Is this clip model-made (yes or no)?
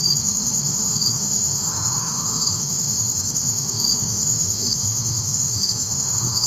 yes